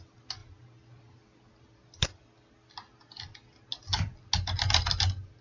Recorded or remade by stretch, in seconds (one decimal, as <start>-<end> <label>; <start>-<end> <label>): 0.0-5.4 recorded